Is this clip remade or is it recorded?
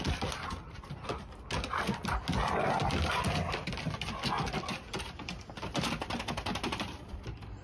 recorded